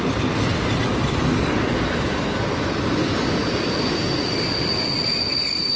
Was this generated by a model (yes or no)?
no